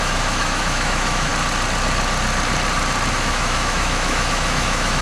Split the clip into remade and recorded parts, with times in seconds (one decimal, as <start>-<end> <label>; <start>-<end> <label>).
0.0-1.3 remade; 1.3-3.1 recorded; 3.1-5.0 remade